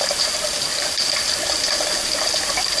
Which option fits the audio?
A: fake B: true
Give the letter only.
B